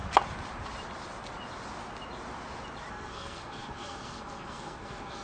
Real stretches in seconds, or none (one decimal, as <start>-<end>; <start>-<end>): 0.0-2.9